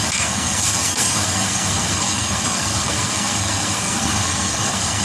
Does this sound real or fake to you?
fake